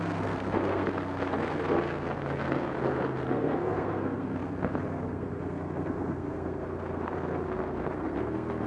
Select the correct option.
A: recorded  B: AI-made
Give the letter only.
B